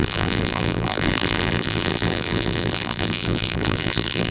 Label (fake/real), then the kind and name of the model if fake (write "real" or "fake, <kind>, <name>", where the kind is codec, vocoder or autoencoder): fake, vocoder, BigVGAN v2